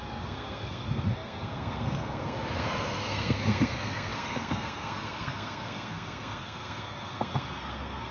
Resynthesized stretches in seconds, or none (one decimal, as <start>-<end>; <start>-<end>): 0.0-8.1